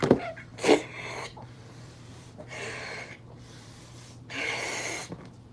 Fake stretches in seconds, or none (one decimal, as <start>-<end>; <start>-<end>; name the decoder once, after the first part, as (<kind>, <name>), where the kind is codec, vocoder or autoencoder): 0.5-3.8 (vocoder, BigVGAN v2)